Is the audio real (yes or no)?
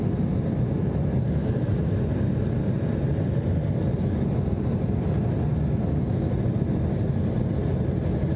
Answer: yes